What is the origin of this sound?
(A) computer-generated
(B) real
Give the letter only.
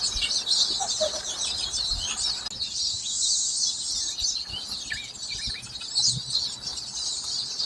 B